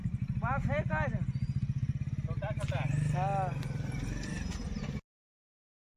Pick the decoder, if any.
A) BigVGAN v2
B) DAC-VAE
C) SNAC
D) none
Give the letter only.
D